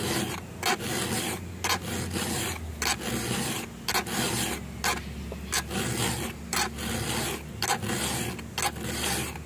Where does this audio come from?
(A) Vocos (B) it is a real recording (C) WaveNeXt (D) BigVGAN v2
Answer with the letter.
B